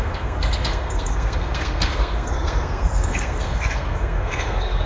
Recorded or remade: remade